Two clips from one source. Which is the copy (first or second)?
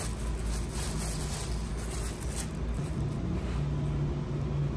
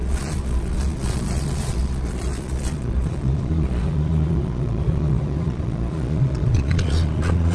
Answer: second